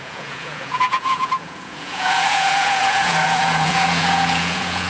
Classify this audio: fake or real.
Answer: fake